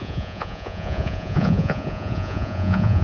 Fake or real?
fake